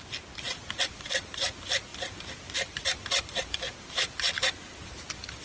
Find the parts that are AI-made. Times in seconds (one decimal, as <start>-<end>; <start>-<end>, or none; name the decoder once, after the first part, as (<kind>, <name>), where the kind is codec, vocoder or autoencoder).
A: none